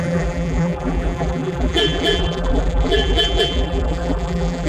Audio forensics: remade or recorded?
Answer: remade